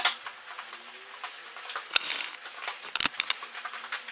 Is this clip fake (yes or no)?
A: no